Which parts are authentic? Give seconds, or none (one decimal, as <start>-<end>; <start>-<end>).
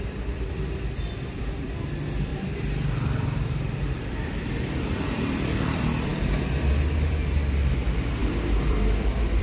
8.2-8.7